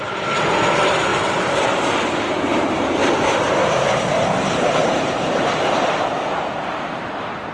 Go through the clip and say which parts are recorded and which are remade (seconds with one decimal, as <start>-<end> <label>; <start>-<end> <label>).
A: 0.0-1.1 recorded; 1.1-1.8 remade; 1.8-3.0 recorded; 3.0-6.7 remade; 6.7-7.5 recorded